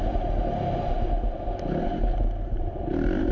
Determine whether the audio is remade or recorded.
recorded